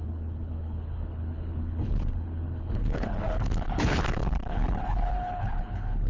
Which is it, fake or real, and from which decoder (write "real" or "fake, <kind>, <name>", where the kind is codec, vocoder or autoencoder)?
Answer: fake, codec, HILCodec